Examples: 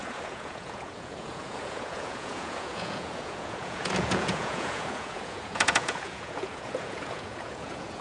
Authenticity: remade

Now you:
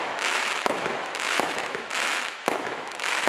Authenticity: remade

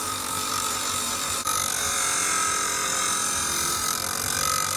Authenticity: remade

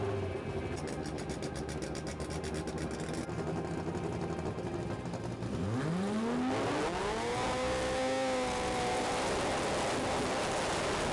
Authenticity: recorded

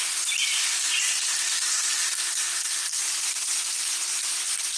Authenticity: remade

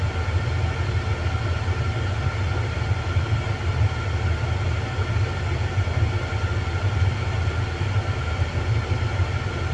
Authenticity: recorded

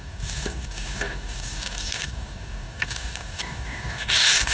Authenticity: remade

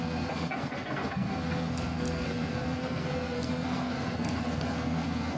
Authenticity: remade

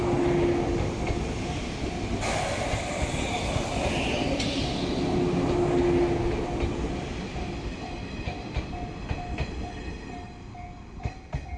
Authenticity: recorded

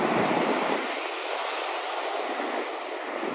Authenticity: recorded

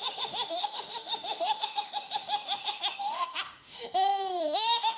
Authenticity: remade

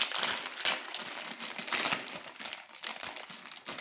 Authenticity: recorded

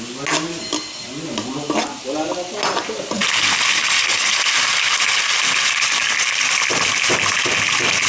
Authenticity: recorded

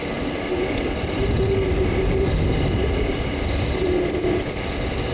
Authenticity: recorded